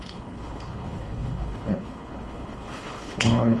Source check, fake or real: fake